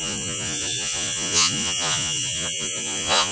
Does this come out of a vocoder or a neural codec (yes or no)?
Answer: yes